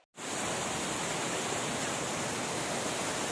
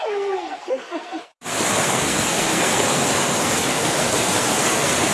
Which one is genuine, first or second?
first